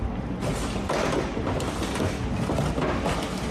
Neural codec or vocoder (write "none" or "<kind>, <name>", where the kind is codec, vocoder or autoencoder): none